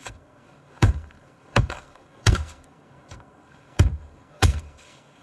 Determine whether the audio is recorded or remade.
remade